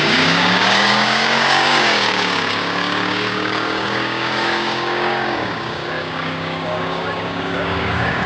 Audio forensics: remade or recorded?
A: remade